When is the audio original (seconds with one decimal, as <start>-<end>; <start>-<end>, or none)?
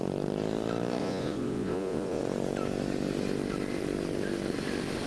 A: 0.0-1.0; 2.2-5.1